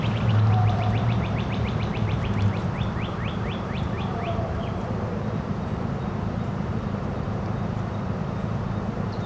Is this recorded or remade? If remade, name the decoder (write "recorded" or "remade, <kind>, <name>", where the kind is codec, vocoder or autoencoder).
remade, vocoder, BigVGAN v2